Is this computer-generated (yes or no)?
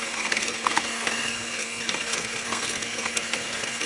yes